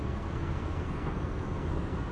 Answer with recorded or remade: remade